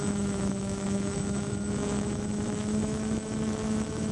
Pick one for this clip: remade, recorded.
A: remade